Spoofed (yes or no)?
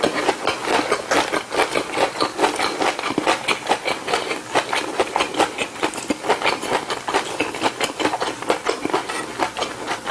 no